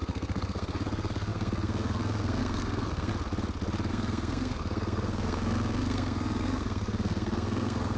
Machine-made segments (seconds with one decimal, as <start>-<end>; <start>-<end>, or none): 0.0-3.1; 3.9-8.0